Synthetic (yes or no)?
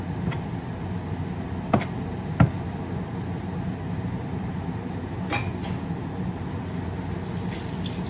no